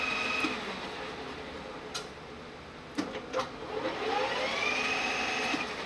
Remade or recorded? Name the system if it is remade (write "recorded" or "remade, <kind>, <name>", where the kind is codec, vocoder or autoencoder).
recorded